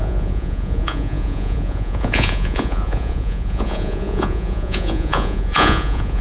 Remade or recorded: remade